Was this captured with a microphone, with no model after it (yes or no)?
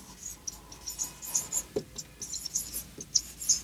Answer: yes